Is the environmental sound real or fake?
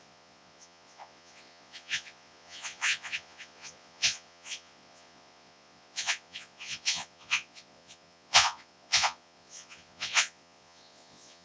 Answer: fake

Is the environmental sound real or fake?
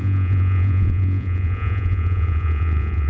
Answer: fake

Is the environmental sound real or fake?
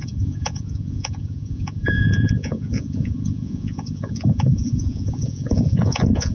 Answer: fake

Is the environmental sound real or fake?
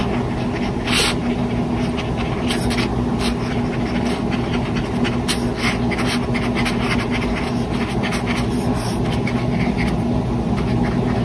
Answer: real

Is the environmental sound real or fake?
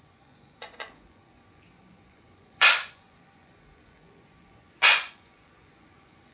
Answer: fake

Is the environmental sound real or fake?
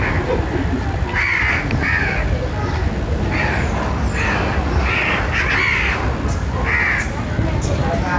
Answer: real